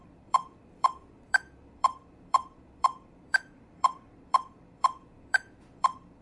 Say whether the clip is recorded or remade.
remade